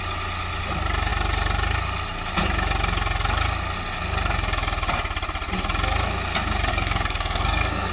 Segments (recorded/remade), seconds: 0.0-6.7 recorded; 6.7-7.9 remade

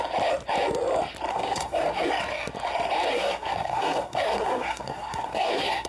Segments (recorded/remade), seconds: 0.0-1.3 recorded; 1.3-2.1 remade; 2.1-3.1 recorded; 3.1-5.9 remade

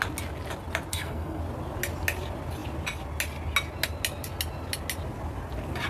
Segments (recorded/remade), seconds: 0.0-0.9 recorded; 0.9-1.4 remade; 1.4-5.9 recorded

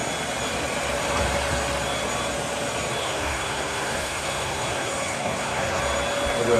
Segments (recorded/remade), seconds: 0.0-3.0 recorded; 3.0-5.8 remade; 5.8-6.6 recorded

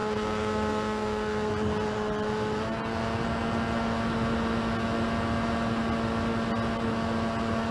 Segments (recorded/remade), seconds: 0.0-1.5 remade; 1.5-7.7 recorded

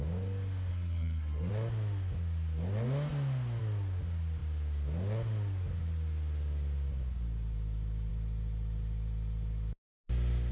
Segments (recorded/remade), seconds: 0.0-0.7 recorded; 0.7-1.5 remade; 1.5-10.5 recorded

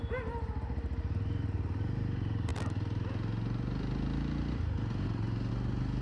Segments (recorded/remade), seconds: 0.0-6.0 recorded

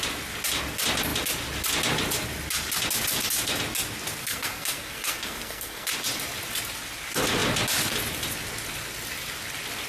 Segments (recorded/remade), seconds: 0.0-4.2 recorded; 4.2-5.9 remade; 5.9-9.9 recorded